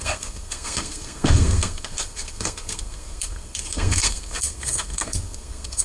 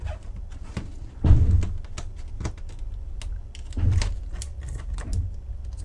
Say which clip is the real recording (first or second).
second